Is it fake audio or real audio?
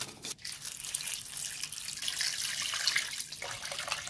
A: real